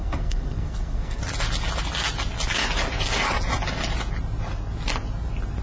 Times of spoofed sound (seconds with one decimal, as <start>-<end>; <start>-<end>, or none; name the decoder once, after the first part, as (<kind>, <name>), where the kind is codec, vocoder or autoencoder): 0.0-1.2 (codec, SNAC)